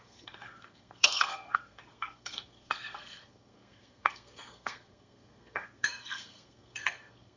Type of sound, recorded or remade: remade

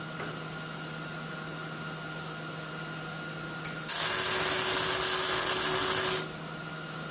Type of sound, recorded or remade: recorded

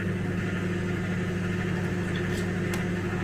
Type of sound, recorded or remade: recorded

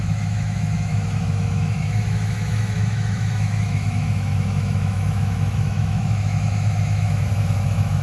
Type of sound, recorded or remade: remade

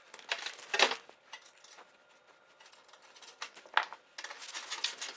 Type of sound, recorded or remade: recorded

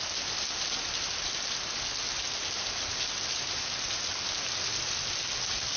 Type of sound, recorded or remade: recorded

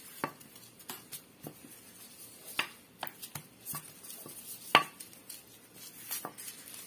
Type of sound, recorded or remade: recorded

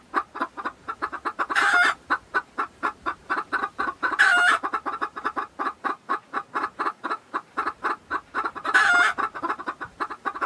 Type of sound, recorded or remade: remade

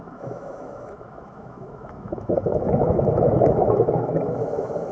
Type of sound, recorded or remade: remade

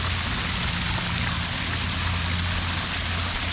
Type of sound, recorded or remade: recorded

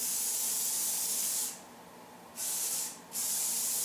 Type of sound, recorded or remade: remade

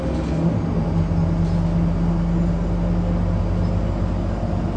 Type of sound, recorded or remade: recorded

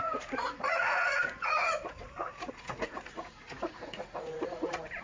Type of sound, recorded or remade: remade